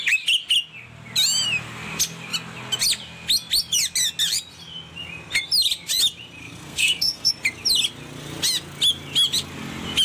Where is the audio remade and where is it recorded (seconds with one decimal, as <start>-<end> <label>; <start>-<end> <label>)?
0.0-6.4 recorded; 6.4-7.3 remade; 7.3-10.0 recorded